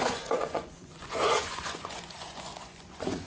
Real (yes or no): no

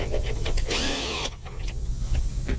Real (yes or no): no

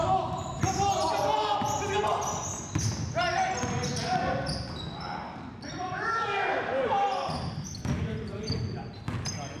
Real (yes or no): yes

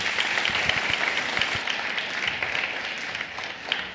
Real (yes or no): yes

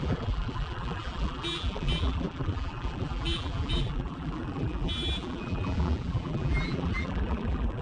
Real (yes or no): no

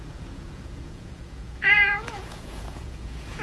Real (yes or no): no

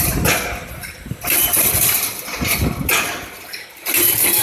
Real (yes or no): no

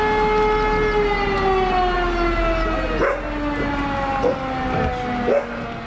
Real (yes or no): yes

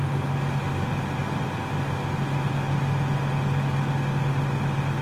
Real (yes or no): yes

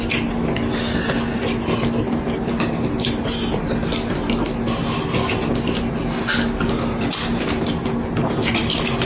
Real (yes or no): yes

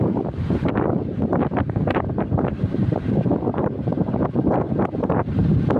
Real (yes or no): no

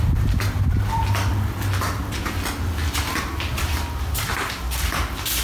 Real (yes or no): yes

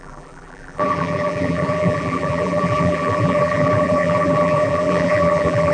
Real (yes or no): no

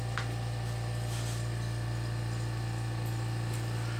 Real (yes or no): yes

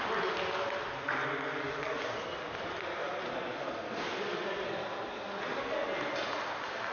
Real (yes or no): yes